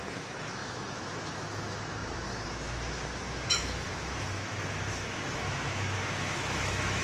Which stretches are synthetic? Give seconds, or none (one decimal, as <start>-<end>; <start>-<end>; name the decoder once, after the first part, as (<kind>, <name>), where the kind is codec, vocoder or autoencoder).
0.0-7.0 (autoencoder, DAC-VAE)

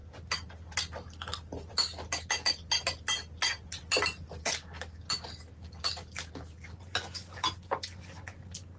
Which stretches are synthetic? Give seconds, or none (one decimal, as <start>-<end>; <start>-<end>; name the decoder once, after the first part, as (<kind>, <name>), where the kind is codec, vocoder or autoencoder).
none

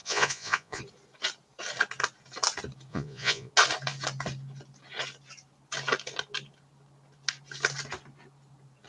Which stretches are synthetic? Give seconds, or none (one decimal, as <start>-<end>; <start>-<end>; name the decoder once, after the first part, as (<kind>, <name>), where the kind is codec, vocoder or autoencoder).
0.0-0.8 (vocoder, Vocos); 2.9-3.5

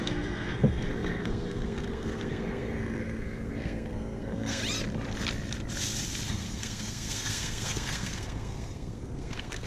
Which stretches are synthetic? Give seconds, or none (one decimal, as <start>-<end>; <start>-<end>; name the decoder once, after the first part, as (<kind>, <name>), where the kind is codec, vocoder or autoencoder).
0.0-4.6 (codec, SNAC); 6.3-9.7